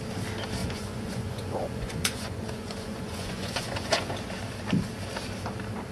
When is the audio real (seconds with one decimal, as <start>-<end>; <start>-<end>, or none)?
0.0-0.6; 4.1-5.9